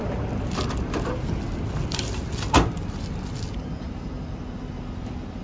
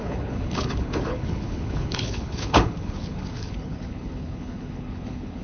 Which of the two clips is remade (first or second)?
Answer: second